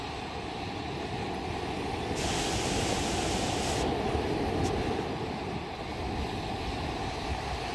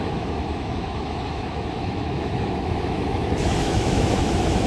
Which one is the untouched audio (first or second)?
first